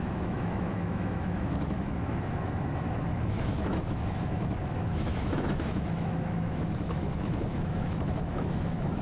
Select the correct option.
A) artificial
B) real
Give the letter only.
A